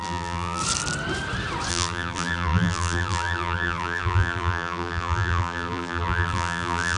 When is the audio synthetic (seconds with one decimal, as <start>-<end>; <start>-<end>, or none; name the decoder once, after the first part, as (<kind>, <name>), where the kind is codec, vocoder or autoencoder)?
0.0-0.6 (vocoder, BigVGAN v2); 1.7-7.0